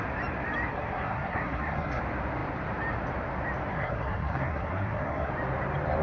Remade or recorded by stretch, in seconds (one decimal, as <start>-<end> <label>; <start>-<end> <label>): 0.0-0.7 recorded; 0.7-2.0 remade; 2.0-3.7 recorded; 3.7-5.3 remade; 5.3-6.0 recorded